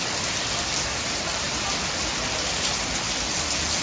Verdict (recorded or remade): recorded